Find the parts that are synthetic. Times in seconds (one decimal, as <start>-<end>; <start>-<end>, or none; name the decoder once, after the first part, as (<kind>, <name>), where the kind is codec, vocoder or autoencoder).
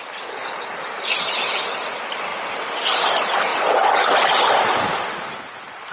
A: none